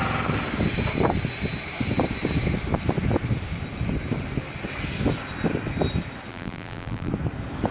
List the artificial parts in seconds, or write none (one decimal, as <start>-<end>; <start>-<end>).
6.3-7.1